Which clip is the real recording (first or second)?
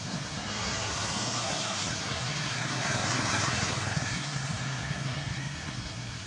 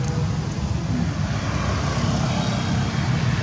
second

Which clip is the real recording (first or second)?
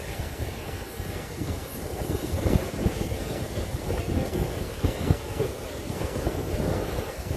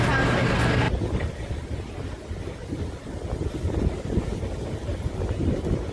second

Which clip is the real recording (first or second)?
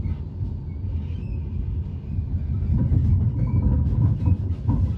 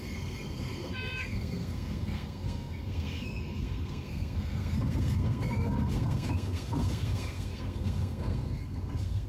first